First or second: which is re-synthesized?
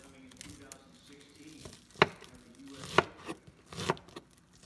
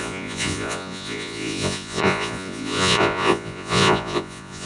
second